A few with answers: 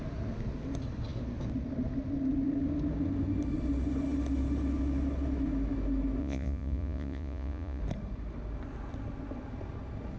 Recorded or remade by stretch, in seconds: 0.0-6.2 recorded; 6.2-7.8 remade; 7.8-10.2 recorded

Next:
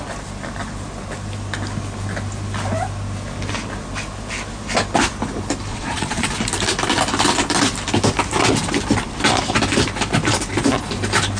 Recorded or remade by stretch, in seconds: 0.0-5.7 recorded; 5.7-6.3 remade; 6.3-11.4 recorded

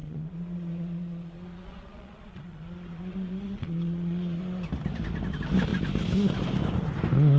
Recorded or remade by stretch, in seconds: 0.0-4.4 remade; 4.4-7.4 recorded